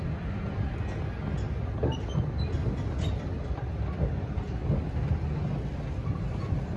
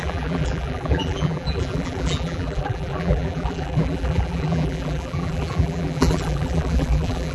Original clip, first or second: first